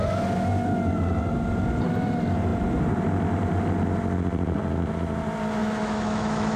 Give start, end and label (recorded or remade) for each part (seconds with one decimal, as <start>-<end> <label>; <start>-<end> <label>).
0.0-5.6 recorded; 5.6-6.6 remade